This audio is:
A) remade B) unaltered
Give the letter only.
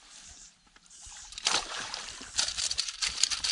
A